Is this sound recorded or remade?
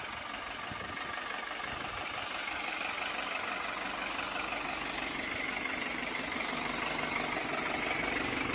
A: recorded